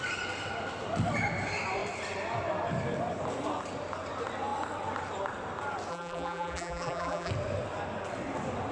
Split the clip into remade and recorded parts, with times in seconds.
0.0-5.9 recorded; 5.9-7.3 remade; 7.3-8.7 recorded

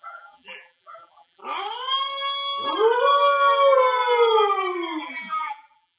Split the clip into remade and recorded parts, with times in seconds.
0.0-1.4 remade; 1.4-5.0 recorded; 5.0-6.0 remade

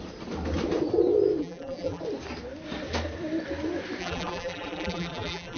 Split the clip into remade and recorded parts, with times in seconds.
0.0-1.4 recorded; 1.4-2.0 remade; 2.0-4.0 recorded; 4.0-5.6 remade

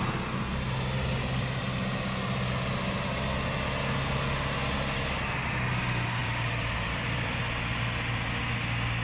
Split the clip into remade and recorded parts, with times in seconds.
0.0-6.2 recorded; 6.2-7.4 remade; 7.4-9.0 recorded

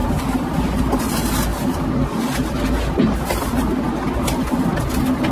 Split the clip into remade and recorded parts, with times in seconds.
0.0-1.0 remade; 1.0-5.3 recorded